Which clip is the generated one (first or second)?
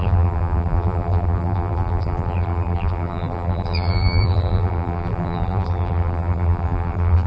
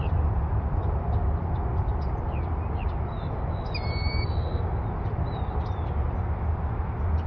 first